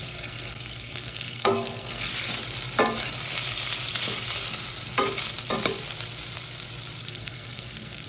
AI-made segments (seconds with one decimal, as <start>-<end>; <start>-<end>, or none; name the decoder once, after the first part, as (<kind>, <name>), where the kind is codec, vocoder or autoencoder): 0.0-2.1 (codec, SNAC); 7.0-8.1